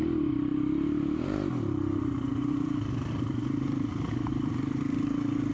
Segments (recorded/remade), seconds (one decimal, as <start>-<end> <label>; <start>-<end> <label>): 0.0-0.5 recorded; 0.5-1.7 remade; 1.7-2.3 recorded; 2.3-4.8 remade; 4.8-5.5 recorded